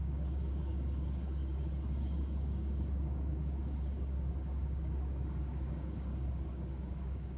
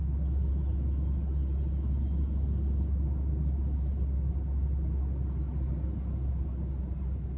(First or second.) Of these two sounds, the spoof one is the first